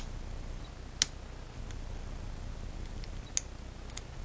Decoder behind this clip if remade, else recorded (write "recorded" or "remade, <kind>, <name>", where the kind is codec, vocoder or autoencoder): recorded